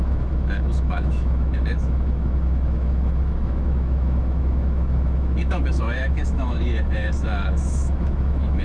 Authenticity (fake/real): fake